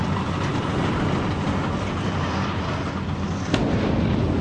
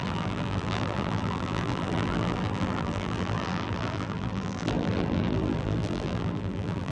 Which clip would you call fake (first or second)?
second